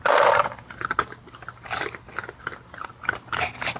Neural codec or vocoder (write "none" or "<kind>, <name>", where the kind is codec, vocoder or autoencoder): none